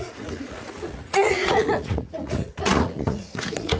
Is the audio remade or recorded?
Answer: remade